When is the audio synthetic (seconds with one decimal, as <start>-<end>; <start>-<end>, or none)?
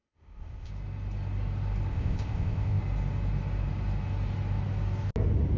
0.0-0.7; 1.9-2.8